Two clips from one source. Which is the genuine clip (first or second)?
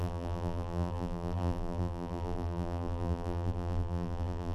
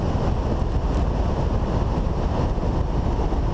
second